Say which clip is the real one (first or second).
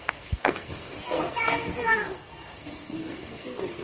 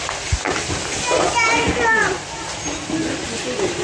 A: second